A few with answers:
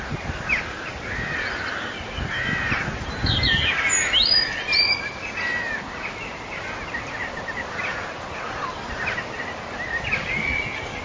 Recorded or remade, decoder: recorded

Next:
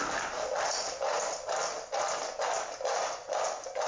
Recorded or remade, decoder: recorded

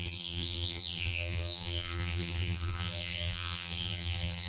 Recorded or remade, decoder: remade, vocoder, BigVGAN v2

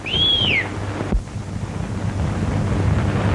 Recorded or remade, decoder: recorded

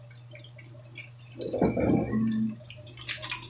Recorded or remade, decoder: recorded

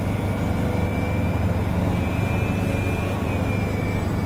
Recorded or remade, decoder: recorded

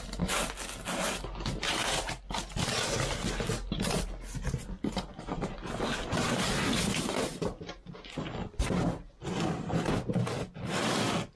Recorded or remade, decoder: recorded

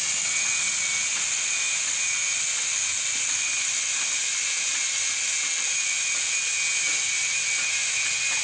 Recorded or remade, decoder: recorded